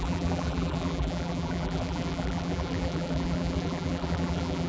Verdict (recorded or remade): remade